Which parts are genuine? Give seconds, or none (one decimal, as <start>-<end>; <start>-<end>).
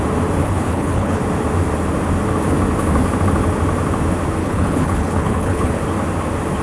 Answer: 0.0-0.4; 1.2-4.4; 5.7-6.6